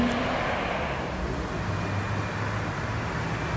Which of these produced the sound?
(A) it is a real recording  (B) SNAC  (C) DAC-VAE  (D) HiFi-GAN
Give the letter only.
A